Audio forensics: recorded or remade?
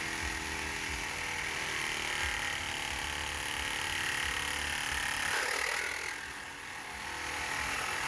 recorded